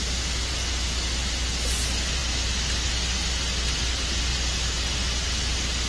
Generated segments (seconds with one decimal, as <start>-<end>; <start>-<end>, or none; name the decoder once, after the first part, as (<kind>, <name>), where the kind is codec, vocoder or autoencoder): none